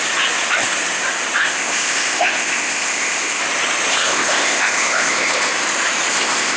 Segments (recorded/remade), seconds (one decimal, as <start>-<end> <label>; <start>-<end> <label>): 0.0-1.4 recorded; 1.4-3.4 remade; 3.4-3.9 recorded; 3.9-5.5 remade; 5.5-6.1 recorded; 6.1-6.6 remade